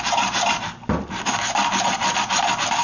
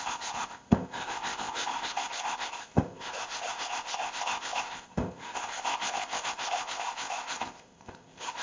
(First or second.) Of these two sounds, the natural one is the first